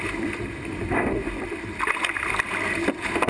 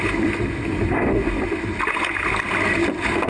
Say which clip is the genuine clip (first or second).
second